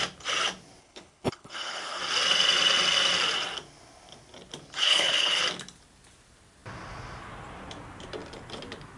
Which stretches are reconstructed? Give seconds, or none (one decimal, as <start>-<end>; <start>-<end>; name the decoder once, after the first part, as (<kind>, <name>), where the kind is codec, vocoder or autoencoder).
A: 0.8-2.0 (codec, HILCodec); 4.8-5.4